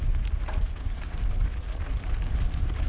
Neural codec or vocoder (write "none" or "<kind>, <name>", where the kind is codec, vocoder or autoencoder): none